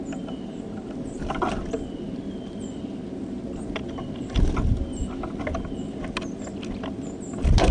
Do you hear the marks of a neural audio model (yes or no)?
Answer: no